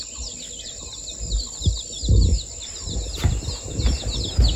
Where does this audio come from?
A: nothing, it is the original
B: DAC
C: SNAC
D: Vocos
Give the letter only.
A